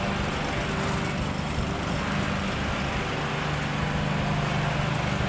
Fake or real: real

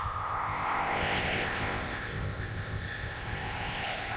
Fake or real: fake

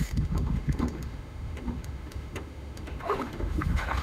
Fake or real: fake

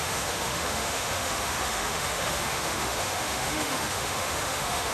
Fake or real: fake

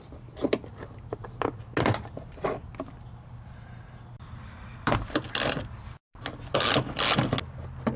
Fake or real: real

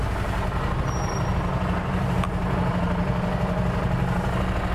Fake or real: real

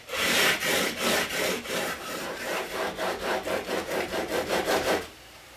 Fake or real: fake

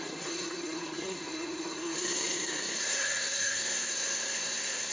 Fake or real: fake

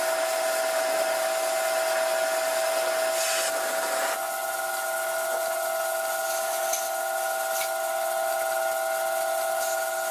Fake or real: real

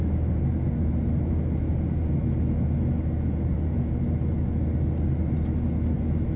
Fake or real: real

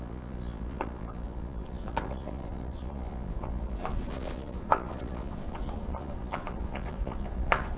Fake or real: fake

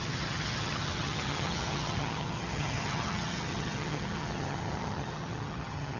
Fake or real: fake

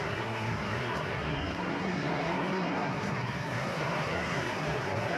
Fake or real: fake